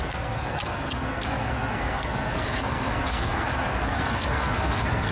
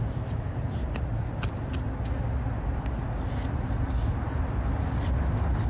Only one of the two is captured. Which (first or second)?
second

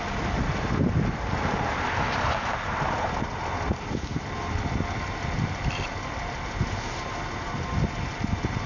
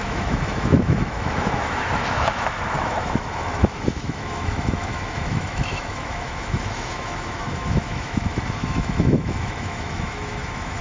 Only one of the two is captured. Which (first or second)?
first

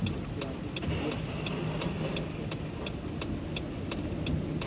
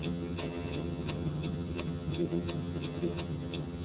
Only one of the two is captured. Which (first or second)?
first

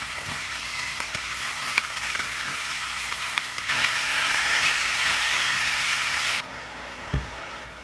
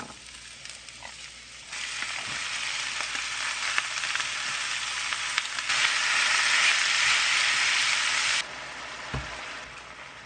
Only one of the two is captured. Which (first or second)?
second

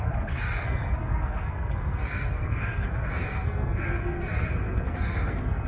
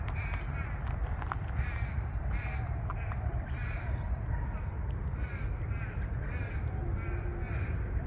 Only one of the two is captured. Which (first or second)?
second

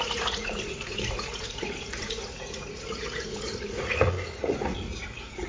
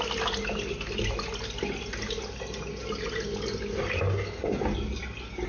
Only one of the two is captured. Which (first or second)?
second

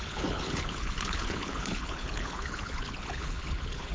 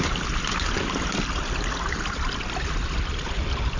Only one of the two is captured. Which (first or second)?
second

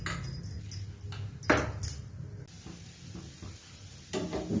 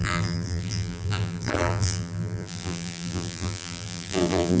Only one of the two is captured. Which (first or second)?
first